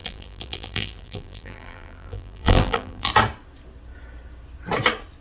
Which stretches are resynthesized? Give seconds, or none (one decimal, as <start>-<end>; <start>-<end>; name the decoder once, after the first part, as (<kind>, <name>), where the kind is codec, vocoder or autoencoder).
0.0-3.1 (vocoder, BigVGAN v2)